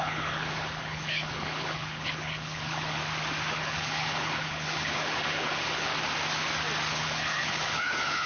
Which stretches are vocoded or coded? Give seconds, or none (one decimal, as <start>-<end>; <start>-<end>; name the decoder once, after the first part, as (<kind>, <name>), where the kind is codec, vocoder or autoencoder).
0.0-3.0 (codec, HILCodec); 3.5-5.9; 6.9-8.3